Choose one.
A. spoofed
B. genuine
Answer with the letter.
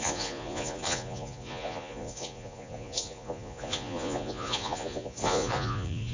A